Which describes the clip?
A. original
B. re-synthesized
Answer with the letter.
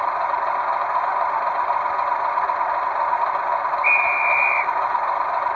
A